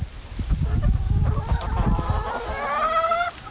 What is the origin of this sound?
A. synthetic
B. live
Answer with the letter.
B